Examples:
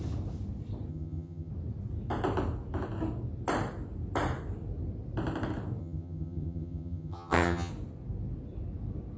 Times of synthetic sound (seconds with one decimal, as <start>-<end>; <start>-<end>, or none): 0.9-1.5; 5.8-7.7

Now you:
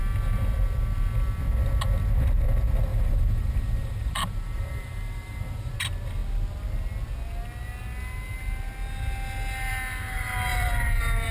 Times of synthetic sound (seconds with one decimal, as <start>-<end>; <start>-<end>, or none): 2.9-5.7; 10.5-11.3

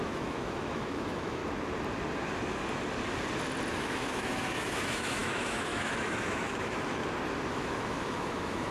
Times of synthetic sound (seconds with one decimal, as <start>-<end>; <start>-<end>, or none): 0.0-1.4; 3.7-7.0; 7.5-8.7

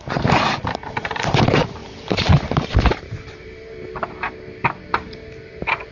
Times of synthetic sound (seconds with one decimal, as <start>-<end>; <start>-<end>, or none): 0.0-5.9

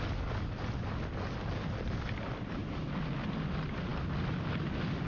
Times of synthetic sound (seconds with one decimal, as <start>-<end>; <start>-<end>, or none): none